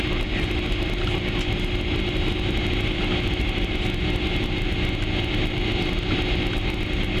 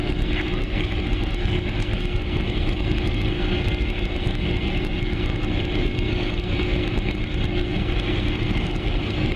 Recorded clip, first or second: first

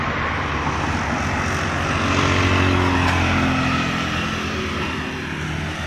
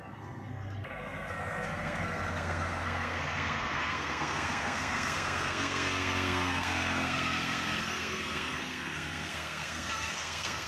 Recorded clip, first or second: first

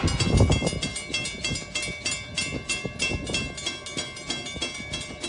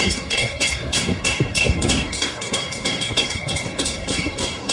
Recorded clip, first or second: first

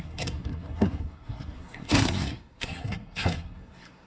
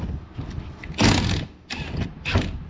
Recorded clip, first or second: second